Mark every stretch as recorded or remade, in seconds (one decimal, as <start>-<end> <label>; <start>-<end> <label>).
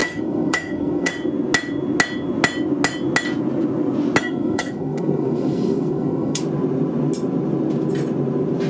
0.0-1.1 remade; 1.1-4.2 recorded; 4.2-6.4 remade; 6.4-8.7 recorded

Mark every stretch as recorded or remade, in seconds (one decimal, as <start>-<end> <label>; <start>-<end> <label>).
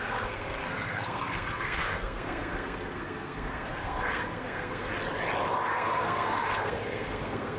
0.0-4.9 remade; 4.9-5.7 recorded; 5.7-7.6 remade